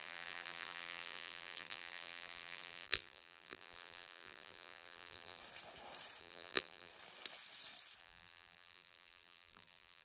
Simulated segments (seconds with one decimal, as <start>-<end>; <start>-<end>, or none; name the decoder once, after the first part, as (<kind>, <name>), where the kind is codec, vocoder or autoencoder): 0.0-5.4 (vocoder, BigVGAN v2); 6.2-6.9; 8.0-10.0